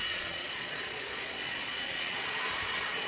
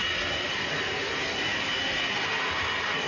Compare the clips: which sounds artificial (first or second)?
first